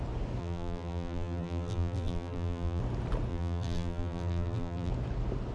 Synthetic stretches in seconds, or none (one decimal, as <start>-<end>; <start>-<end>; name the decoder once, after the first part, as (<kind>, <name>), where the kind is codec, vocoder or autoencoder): 0.4-2.8 (vocoder, BigVGAN v2); 3.3-4.9